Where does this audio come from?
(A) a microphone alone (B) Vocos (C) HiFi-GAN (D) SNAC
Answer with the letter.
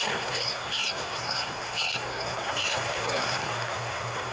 D